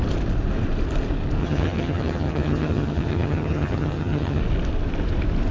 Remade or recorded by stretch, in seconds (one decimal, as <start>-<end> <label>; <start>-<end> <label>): 0.0-1.4 recorded; 1.4-4.4 remade; 4.4-5.5 recorded